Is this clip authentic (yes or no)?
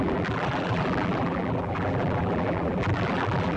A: no